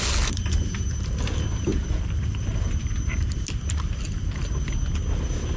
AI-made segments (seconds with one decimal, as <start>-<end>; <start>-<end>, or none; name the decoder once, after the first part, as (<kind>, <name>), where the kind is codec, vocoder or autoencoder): 1.7-3.3 (vocoder, BigVGAN v2)